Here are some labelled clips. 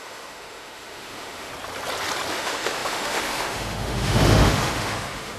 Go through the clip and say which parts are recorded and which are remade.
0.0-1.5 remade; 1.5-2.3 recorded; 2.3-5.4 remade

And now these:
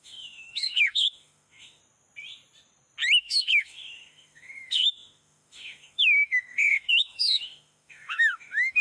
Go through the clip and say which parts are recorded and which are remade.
0.0-1.8 remade; 1.8-3.2 recorded; 3.2-8.8 remade

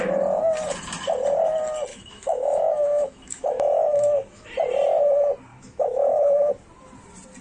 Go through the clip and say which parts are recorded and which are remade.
0.0-1.9 recorded; 1.9-4.5 remade; 4.5-5.5 recorded; 5.5-6.5 remade; 6.5-7.4 recorded

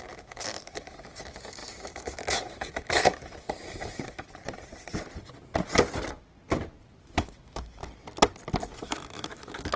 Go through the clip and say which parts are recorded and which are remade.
0.0-4.4 remade; 4.4-7.0 recorded; 7.0-7.8 remade; 7.8-8.7 recorded; 8.7-9.8 remade

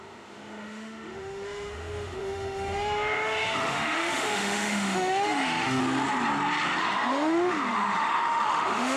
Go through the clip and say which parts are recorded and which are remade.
0.0-5.8 remade; 5.8-6.8 recorded; 6.8-9.0 remade

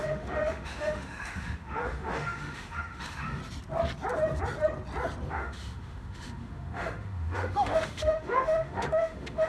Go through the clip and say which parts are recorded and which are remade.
0.0-3.4 remade; 3.4-5.3 recorded; 5.3-9.5 remade

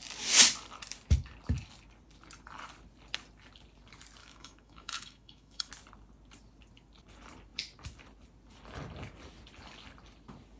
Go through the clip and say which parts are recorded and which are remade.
0.0-4.2 recorded; 4.2-5.7 remade; 5.7-10.6 recorded

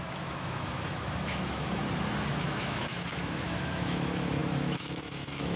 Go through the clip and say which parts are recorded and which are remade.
0.0-1.8 remade; 1.8-2.3 recorded; 2.3-5.6 remade